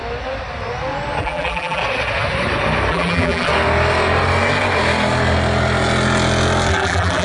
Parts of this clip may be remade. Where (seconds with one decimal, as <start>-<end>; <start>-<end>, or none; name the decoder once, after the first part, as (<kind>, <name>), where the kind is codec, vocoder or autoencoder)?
1.2-1.8 (vocoder, BigVGAN v2); 2.9-3.5; 6.7-7.2